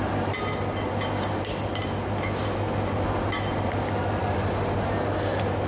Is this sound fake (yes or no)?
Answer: no